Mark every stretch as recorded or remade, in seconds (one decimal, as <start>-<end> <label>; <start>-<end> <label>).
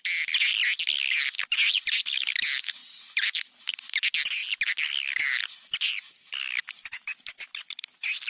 0.0-8.3 recorded